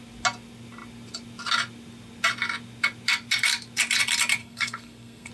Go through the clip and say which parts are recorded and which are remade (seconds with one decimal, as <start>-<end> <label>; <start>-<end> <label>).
0.0-4.4 recorded; 4.4-5.3 remade